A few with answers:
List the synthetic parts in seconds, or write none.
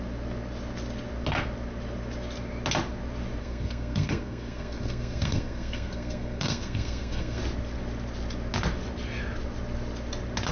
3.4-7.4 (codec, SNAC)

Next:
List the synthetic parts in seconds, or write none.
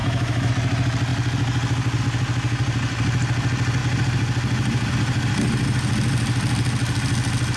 0.0-0.5 (autoencoder, DAC-VAE)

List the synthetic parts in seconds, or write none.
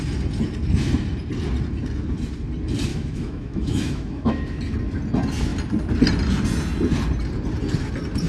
2.9-4.6 (autoencoder, DAC-VAE)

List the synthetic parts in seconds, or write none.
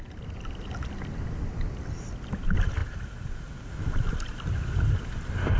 none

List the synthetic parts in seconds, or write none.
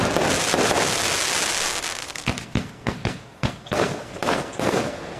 2.0-5.2 (codec, SNAC)